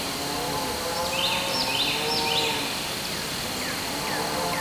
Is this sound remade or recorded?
recorded